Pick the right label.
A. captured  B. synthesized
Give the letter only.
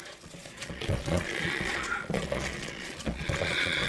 B